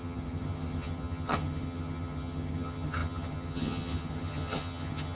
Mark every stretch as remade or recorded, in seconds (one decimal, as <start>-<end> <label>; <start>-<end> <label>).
0.0-5.1 remade